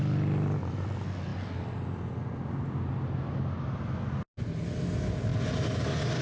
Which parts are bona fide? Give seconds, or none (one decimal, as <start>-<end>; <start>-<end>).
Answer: 0.0-6.2